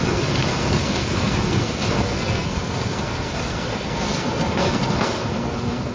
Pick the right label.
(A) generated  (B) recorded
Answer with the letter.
A